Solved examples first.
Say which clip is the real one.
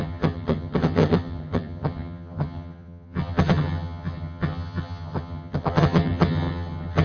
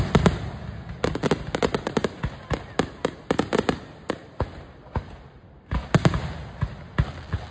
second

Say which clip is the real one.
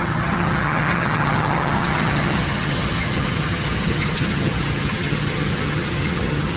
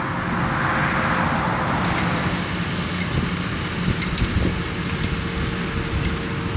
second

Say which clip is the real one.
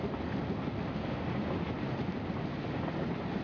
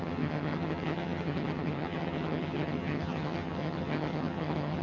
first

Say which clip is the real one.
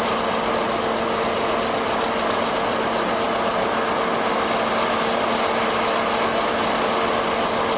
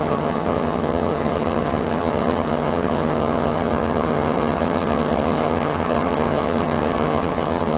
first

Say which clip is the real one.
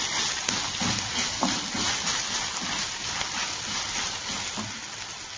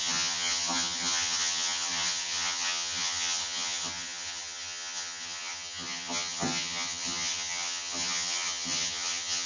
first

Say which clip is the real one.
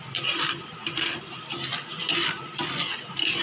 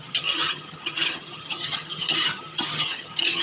first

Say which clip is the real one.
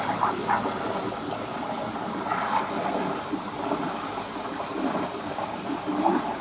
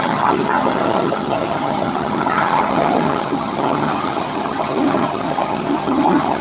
first